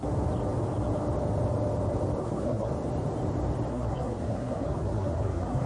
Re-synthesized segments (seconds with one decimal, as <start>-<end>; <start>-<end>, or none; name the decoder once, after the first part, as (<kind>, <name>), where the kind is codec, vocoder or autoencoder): 2.2-2.7 (codec, SNAC); 3.7-5.7